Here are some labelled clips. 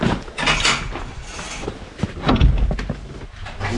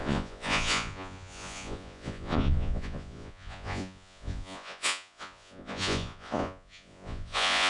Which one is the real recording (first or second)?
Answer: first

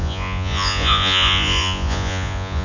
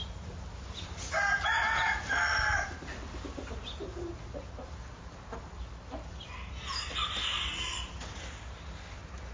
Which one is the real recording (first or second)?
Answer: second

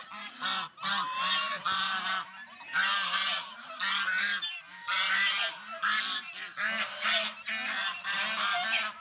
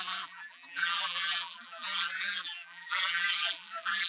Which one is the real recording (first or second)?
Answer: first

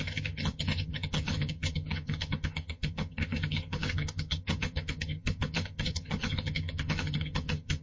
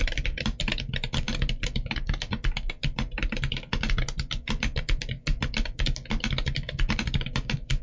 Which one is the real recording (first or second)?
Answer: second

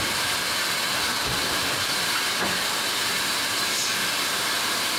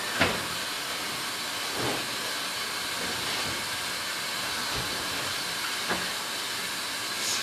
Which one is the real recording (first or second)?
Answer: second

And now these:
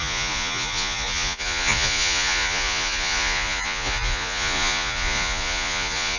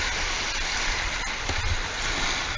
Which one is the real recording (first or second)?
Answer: second